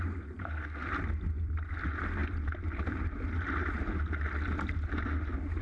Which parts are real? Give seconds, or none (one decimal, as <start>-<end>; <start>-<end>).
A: 0.0-0.4; 0.9-5.6